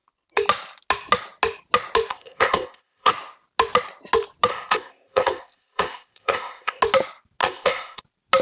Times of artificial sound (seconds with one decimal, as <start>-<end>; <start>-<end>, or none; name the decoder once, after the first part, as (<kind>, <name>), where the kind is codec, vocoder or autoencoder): 2.1-3.1 (codec, ZipCodec); 4.5-6.8; 7.4-8.0